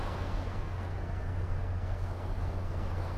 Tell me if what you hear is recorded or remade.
remade